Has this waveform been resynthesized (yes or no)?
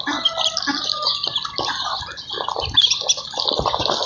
no